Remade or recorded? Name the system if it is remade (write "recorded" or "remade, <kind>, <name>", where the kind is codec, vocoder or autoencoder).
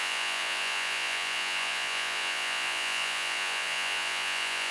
remade, vocoder, Vocos